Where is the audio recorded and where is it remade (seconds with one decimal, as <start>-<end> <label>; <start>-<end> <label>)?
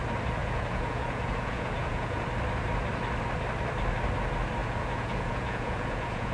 0.0-0.4 recorded; 0.4-2.2 remade; 2.2-4.6 recorded; 4.6-6.3 remade